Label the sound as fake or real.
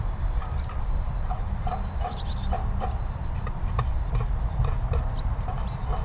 fake